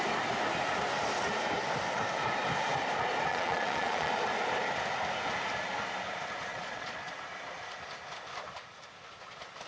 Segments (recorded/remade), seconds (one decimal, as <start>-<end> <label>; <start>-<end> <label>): 0.0-3.3 recorded; 3.3-4.1 remade; 4.1-6.5 recorded; 6.5-7.1 remade; 7.1-9.7 recorded